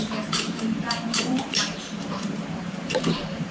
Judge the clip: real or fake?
fake